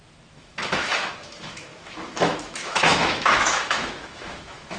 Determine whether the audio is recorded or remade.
remade